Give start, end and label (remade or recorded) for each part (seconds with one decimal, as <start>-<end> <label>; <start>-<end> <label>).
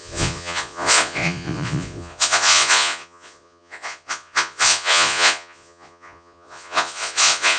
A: 0.0-7.6 remade